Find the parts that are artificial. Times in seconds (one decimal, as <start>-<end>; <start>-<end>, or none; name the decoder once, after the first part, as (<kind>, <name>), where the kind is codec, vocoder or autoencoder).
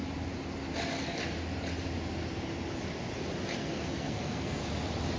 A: 3.6-4.6 (codec, SNAC)